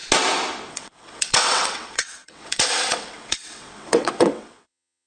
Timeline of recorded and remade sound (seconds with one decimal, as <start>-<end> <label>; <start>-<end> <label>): 0.0-0.7 recorded; 0.7-5.1 remade